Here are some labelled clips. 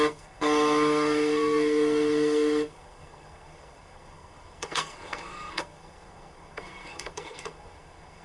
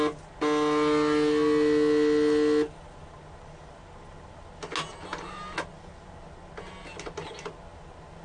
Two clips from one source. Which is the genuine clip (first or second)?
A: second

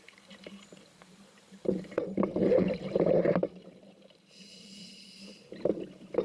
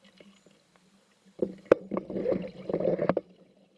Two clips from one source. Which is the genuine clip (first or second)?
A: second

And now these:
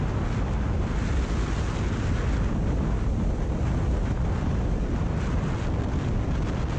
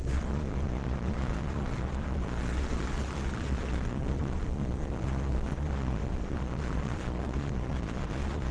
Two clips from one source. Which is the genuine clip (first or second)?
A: first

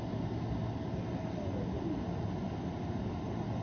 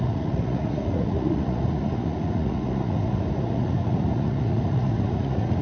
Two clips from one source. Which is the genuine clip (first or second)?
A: first